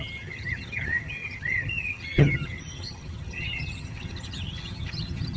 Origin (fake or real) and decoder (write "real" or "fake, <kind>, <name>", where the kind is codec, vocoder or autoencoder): fake, vocoder, HiFi-GAN